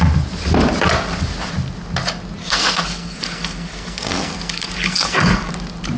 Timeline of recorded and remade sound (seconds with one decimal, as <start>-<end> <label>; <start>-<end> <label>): 0.0-2.4 recorded; 2.4-5.5 remade; 5.5-6.0 recorded